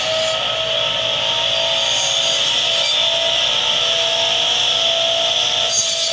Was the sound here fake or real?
real